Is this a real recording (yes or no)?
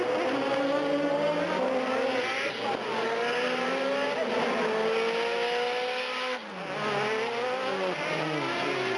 yes